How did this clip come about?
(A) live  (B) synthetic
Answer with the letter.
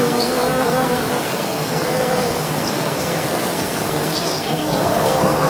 B